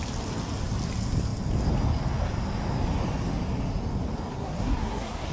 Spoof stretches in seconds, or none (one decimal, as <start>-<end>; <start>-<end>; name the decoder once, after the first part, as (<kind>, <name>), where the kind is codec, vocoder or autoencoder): 4.3-5.3 (codec, SNAC)